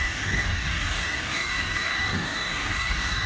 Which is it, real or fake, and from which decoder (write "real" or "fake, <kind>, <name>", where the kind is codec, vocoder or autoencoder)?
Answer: fake, codec, DAC